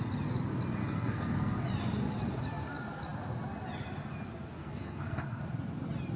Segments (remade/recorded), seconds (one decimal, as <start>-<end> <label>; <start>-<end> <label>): 0.0-0.8 recorded; 0.8-1.6 remade; 1.6-4.6 recorded; 4.6-5.4 remade; 5.4-6.2 recorded